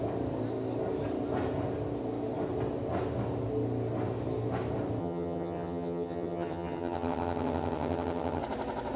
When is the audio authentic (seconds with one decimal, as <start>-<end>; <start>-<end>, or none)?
0.0-5.0; 8.4-9.0